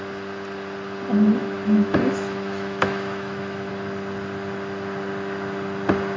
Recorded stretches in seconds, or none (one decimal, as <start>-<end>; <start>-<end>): 0.0-1.4; 3.7-6.2